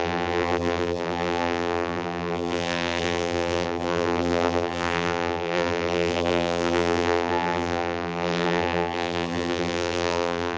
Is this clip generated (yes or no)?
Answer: yes